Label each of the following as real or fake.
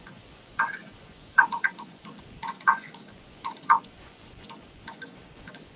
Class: fake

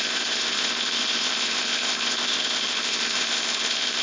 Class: fake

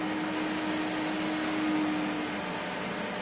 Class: real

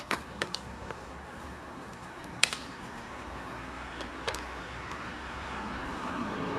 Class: fake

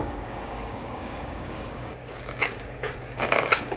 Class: fake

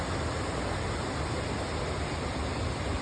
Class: real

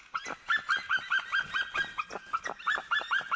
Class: real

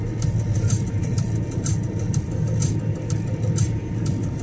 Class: real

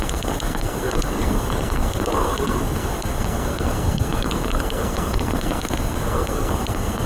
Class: fake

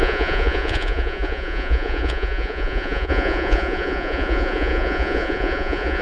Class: fake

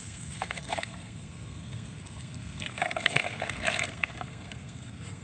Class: fake